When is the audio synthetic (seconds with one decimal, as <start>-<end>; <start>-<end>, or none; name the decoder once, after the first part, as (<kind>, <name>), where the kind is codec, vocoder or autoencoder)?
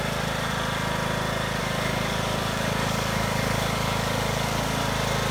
1.6-4.8 (codec, DAC)